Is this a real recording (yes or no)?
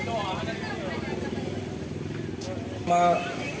yes